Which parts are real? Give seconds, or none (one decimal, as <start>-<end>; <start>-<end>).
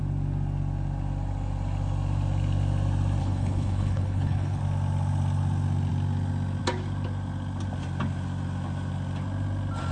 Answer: 0.0-3.2; 4.6-9.9